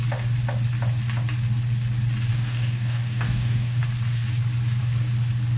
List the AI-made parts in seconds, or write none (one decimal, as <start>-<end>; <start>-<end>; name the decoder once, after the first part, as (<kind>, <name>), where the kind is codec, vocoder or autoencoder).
2.3-3.8 (codec, DAC)